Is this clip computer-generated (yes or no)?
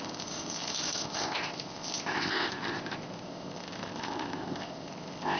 yes